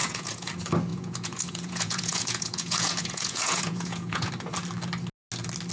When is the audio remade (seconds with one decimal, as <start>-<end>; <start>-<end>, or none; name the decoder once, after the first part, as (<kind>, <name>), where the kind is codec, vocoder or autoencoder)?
0.0-0.5 (vocoder, Vocos); 0.9-4.3